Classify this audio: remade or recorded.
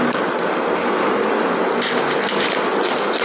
recorded